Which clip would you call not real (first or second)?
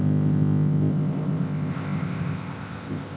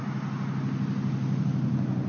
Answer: first